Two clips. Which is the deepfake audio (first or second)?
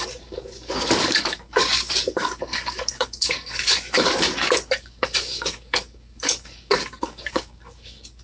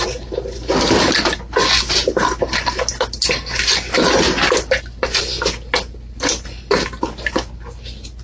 first